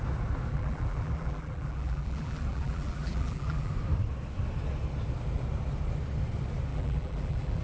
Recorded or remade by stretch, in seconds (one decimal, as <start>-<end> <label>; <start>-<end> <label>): 0.0-0.5 recorded; 0.5-3.7 remade; 3.7-6.7 recorded; 6.7-7.6 remade